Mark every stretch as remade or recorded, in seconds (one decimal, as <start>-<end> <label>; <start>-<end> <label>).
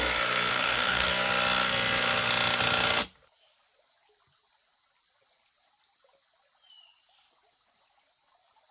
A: 0.0-0.5 recorded; 0.5-1.1 remade; 1.1-8.7 recorded